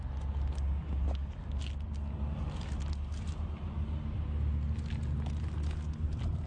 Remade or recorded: recorded